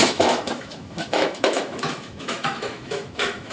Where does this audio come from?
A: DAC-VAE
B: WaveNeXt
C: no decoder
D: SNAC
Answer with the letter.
A